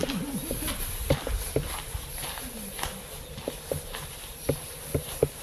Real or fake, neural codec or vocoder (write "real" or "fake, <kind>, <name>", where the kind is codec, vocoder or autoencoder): real